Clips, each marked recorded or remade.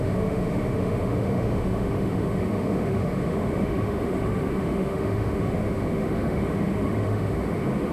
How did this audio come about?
remade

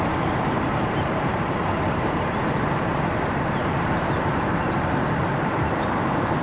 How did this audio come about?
remade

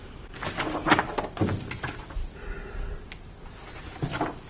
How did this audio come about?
recorded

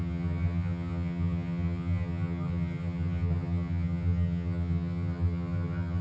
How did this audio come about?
remade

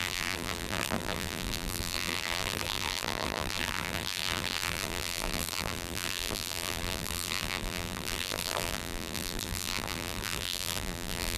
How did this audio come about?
remade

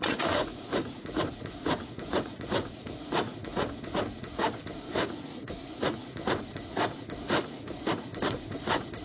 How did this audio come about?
remade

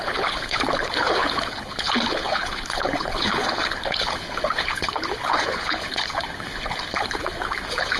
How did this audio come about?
remade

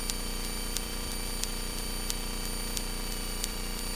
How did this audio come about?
remade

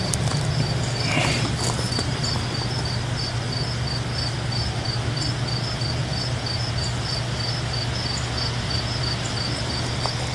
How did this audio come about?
recorded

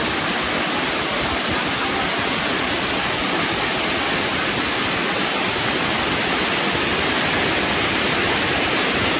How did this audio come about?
recorded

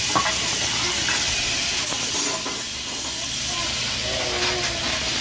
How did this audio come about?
recorded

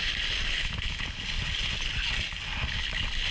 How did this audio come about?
recorded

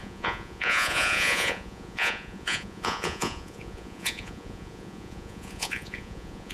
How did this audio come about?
remade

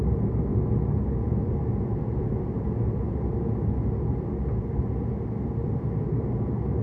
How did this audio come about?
recorded